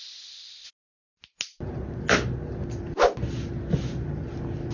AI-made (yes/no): no